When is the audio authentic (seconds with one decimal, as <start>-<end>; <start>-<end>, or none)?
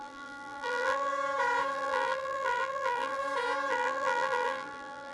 1.1-1.7; 3.2-3.7